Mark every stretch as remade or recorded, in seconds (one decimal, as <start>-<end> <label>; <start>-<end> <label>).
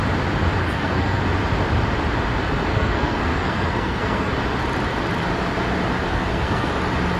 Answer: 0.0-0.6 recorded; 0.6-1.2 remade; 1.2-2.7 recorded; 2.7-4.3 remade; 4.3-6.1 recorded; 6.1-6.7 remade; 6.7-7.2 recorded